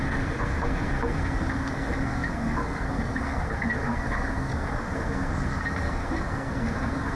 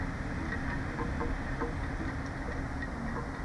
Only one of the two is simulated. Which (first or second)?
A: first